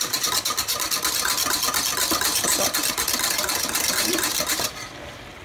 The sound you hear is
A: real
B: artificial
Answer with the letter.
A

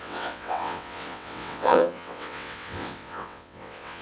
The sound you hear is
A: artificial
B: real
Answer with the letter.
A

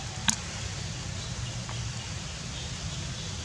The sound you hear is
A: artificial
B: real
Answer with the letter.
B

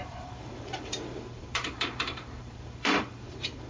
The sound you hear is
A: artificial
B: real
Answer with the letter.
A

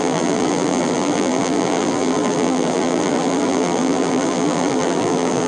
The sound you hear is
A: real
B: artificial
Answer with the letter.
B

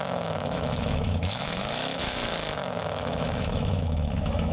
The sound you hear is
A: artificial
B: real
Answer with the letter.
A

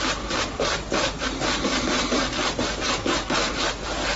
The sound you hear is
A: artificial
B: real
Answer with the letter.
B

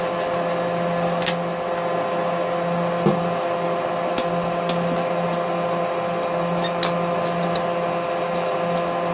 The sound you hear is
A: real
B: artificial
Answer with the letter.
A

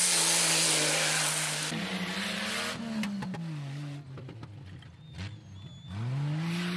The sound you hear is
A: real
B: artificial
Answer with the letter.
A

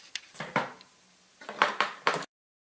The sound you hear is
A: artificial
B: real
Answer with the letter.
A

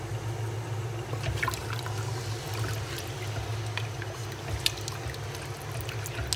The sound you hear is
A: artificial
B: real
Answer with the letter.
B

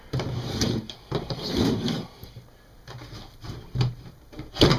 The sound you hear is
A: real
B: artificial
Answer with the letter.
B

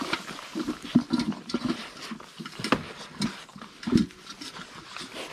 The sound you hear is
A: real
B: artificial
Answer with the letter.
A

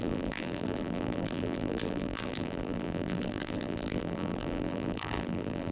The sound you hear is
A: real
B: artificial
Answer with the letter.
B